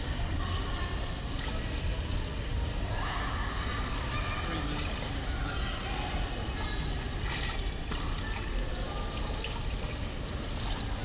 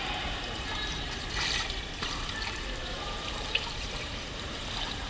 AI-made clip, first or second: second